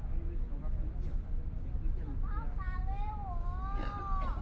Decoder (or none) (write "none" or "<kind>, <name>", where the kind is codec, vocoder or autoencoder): none